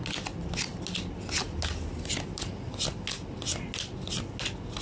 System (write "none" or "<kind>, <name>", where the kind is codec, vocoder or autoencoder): none